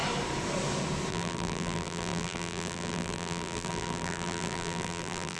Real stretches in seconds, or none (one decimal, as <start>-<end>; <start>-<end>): 0.0-1.1